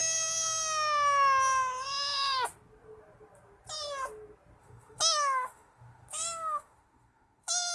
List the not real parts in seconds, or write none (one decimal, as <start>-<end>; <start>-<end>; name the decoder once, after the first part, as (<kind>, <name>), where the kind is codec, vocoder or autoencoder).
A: 4.6-7.7 (autoencoder, DAC-VAE)